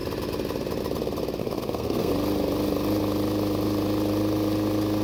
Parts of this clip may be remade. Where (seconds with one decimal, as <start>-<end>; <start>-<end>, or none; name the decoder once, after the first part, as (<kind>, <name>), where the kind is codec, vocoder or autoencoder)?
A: 1.4-2.1 (codec, SNAC)

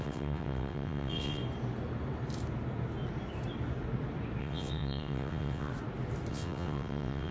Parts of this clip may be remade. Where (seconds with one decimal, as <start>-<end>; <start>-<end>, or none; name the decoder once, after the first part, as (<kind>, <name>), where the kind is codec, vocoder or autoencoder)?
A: 0.0-1.4 (vocoder, WaveNeXt); 4.4-5.7; 6.3-7.3

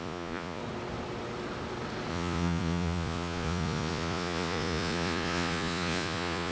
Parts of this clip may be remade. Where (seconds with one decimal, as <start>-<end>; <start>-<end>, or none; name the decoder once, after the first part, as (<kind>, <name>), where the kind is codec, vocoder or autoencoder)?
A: 0.0-0.6 (vocoder, Vocos); 2.1-6.5

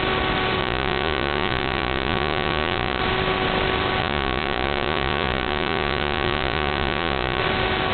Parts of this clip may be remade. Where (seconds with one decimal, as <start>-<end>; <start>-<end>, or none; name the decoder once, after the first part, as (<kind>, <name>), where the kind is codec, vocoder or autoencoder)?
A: 0.6-3.0 (vocoder, Vocos); 4.0-7.4

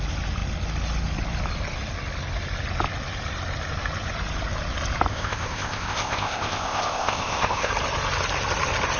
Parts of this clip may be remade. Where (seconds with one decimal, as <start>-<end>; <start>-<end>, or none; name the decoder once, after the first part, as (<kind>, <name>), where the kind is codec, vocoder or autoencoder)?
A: 5.1-7.7 (codec, ZipCodec)

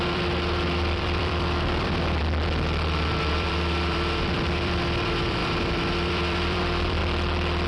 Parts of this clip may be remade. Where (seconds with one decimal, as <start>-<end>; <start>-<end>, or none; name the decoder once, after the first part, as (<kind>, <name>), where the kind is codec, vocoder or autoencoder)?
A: 0.0-2.2 (vocoder, BigVGAN v2); 3.3-7.0